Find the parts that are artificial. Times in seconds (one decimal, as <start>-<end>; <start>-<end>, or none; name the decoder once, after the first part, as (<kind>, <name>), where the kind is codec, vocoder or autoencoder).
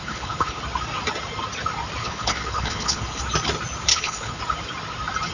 0.0-0.6 (codec, HILCodec); 2.0-3.2; 3.9-4.4